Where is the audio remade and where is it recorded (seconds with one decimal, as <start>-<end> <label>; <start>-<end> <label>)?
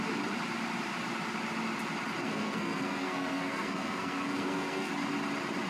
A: 0.0-2.2 recorded; 2.2-4.9 remade; 4.9-5.7 recorded